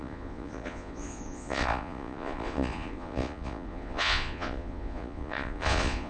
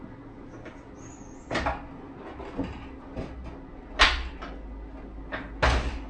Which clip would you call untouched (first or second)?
second